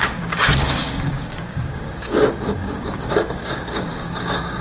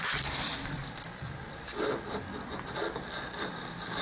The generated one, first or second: first